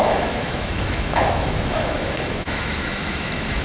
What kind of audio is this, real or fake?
fake